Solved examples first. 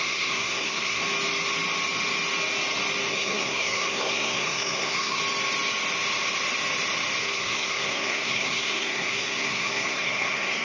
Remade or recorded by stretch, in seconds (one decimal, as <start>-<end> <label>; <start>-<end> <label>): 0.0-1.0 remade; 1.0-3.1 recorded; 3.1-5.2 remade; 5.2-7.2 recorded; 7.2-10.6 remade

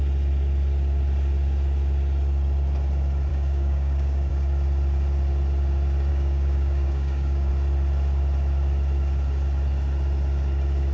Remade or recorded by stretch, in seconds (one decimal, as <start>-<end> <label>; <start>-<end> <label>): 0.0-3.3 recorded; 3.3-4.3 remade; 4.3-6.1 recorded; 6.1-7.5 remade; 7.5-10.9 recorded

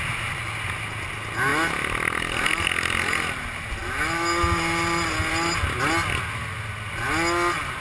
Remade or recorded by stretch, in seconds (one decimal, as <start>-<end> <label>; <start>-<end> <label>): 0.0-7.8 recorded

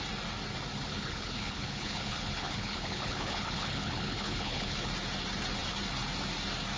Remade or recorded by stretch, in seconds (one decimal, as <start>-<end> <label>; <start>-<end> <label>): 0.0-0.9 recorded; 0.9-4.9 remade; 4.9-6.8 recorded

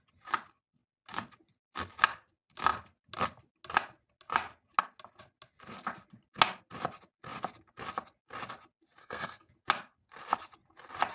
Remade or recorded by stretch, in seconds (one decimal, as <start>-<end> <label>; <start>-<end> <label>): 0.0-9.0 recorded; 9.0-9.5 remade; 9.5-11.1 recorded

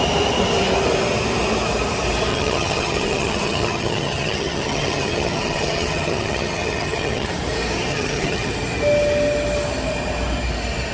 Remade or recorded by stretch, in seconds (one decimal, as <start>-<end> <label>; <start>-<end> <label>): 0.0-2.3 recorded; 2.3-7.3 remade; 7.3-7.9 recorded; 7.9-8.5 remade; 8.5-10.9 recorded